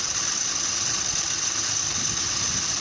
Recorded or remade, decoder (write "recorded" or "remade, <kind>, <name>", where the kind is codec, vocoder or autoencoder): recorded